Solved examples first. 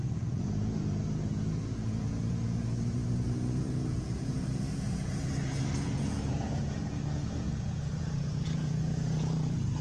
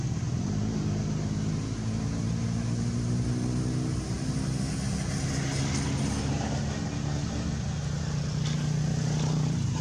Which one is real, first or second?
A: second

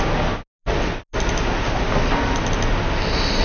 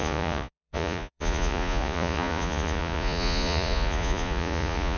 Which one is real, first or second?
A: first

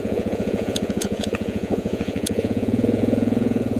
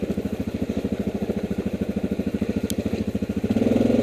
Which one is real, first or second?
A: second